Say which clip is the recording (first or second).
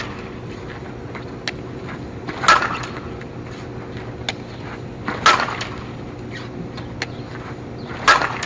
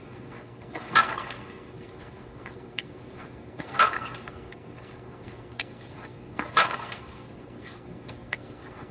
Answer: first